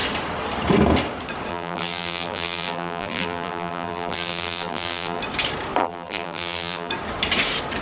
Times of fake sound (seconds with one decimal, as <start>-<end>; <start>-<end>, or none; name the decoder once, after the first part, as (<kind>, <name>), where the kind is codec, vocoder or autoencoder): 1.5-5.2 (vocoder, BigVGAN v2); 5.8-6.9